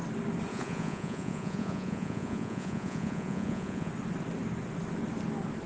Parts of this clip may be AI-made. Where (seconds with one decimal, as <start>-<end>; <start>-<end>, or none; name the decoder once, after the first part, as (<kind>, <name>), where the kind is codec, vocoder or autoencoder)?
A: 0.5-3.9 (vocoder, Vocos)